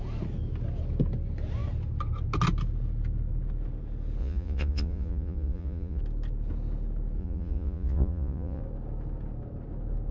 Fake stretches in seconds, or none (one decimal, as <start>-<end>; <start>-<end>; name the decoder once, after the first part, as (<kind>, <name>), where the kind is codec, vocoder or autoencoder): 4.2-6.0 (vocoder, Vocos); 7.2-8.6